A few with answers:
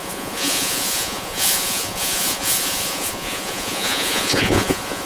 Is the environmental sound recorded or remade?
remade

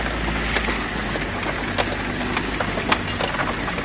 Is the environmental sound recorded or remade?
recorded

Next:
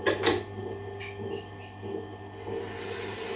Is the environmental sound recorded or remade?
recorded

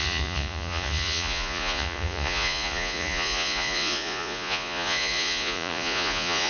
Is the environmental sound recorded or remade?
remade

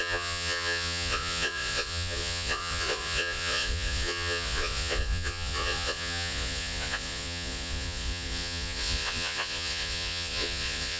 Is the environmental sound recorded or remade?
remade